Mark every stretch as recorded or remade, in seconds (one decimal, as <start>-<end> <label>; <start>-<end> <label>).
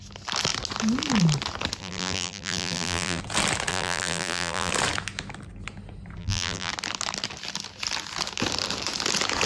0.0-1.8 recorded; 1.8-3.2 remade; 3.2-3.7 recorded; 3.7-4.7 remade; 4.7-6.2 recorded; 6.2-6.7 remade; 6.7-9.5 recorded